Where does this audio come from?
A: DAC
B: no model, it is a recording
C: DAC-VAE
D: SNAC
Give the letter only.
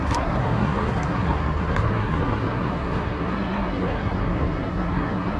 D